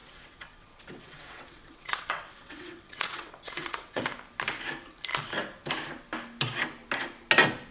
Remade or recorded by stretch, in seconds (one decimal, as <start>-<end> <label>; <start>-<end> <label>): 0.0-4.0 remade; 4.0-7.7 recorded